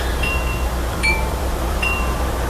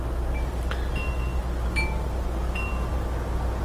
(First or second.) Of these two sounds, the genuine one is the second